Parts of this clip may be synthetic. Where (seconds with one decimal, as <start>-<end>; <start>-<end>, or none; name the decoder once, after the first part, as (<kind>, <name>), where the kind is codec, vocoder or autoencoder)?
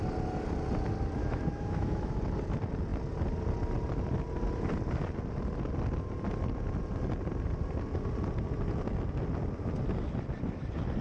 1.2-2.2 (autoencoder, DAC-VAE)